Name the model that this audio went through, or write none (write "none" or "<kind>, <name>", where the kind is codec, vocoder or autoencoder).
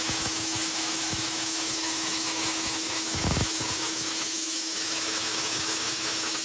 autoencoder, DAC-VAE